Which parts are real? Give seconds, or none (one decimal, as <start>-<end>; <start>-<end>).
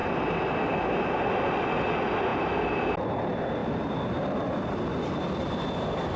2.3-3.0